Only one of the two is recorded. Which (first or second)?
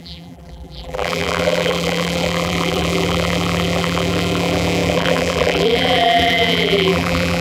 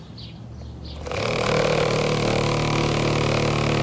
second